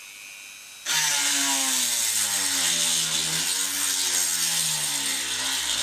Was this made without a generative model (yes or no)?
yes